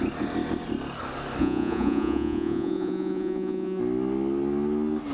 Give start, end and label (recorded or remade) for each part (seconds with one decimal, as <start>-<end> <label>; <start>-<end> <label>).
0.0-1.4 recorded; 1.4-3.8 remade; 3.8-5.1 recorded